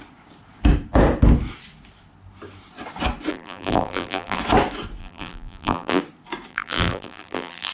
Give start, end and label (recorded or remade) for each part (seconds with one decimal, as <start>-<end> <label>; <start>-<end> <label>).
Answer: 0.0-3.3 recorded; 3.3-4.4 remade; 4.4-5.0 recorded; 5.0-6.0 remade; 6.0-6.5 recorded; 6.5-7.7 remade